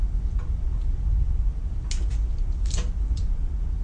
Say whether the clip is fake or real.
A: real